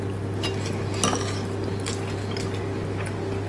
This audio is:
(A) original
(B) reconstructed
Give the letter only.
A